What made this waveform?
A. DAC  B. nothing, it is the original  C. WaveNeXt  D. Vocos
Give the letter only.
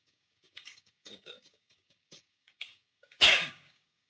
A